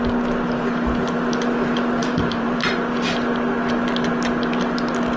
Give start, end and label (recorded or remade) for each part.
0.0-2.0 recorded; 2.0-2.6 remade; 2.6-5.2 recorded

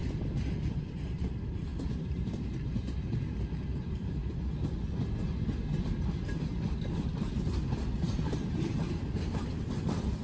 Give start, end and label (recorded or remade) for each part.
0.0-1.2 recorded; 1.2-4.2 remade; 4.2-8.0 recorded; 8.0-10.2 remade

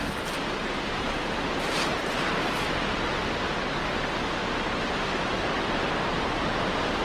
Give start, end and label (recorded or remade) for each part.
0.0-1.1 remade; 1.1-7.0 recorded